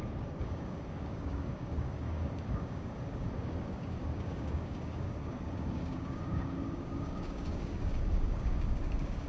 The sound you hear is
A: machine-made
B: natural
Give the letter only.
A